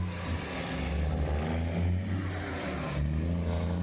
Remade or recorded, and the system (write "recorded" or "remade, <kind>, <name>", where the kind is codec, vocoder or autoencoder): recorded